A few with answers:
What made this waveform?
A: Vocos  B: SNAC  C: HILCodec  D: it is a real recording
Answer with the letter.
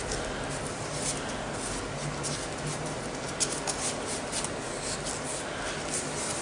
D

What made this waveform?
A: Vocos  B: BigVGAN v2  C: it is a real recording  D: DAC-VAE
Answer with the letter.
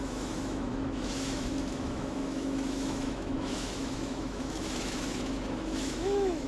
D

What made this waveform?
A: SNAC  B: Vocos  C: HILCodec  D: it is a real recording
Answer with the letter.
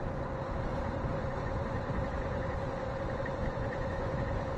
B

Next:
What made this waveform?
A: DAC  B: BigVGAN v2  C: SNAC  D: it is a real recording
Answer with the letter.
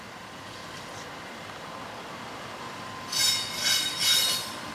D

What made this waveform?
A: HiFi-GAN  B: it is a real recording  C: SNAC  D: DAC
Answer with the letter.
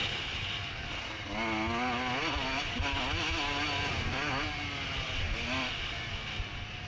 B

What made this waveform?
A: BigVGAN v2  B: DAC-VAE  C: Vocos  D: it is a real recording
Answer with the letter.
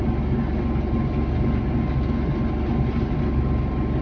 D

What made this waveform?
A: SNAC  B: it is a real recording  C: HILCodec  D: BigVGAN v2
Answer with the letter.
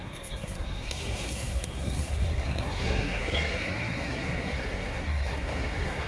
A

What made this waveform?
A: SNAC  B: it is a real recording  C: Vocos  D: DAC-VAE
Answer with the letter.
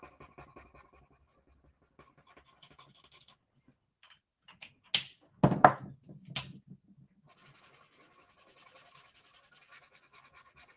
B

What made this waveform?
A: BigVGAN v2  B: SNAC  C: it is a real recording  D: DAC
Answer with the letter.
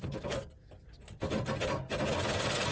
A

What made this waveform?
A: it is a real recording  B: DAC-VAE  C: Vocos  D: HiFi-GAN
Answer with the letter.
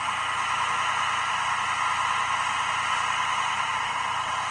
A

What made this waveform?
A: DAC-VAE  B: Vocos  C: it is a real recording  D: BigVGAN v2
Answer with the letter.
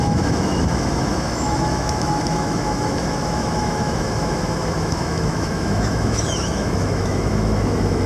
A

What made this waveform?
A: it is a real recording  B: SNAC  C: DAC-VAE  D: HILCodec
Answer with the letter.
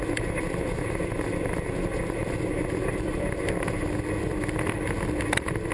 A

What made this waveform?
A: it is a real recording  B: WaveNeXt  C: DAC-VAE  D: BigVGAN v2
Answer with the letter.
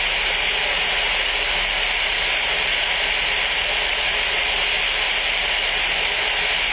A